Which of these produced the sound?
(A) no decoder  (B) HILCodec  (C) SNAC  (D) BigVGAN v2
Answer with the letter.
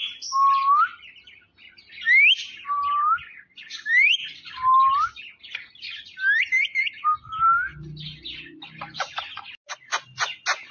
A